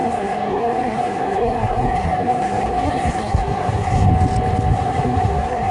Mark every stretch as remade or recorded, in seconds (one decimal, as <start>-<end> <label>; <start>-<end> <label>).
0.0-4.1 remade; 4.1-4.7 recorded; 4.7-5.7 remade